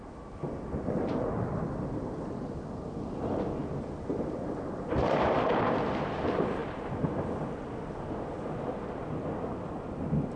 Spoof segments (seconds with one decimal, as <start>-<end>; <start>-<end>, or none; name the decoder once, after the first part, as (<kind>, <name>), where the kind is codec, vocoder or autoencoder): none